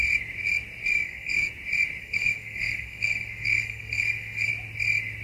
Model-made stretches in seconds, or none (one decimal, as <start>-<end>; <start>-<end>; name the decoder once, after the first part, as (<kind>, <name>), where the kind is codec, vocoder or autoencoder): 0.9-1.5 (codec, SNAC); 2.0-4.5